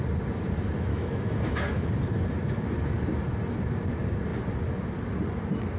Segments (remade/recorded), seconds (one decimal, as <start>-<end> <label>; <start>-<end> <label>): 0.0-0.9 recorded; 0.9-1.9 remade; 1.9-5.8 recorded